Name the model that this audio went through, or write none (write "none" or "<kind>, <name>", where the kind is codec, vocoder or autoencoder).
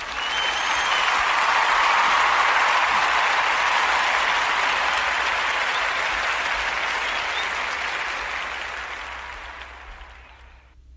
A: none